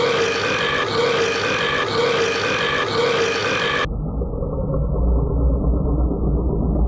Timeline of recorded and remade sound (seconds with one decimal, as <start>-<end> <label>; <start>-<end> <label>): 0.0-6.9 recorded

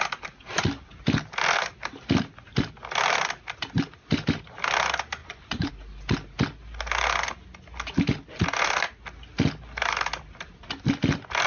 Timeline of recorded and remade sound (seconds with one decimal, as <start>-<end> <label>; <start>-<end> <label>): 0.0-5.2 recorded; 5.2-5.7 remade; 5.7-11.5 recorded

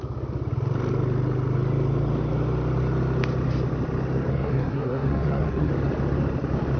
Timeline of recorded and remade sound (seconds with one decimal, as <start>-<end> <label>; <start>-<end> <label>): 0.0-4.3 recorded; 4.3-5.7 remade; 5.7-6.8 recorded

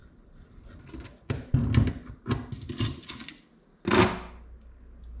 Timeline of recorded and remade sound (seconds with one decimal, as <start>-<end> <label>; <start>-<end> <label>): 0.0-5.2 recorded

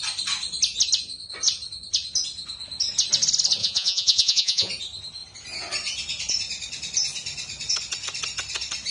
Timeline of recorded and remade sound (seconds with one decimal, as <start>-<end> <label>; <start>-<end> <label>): 0.0-3.6 recorded; 3.6-4.7 remade; 4.7-8.9 recorded